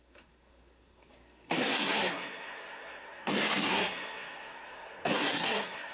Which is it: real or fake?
fake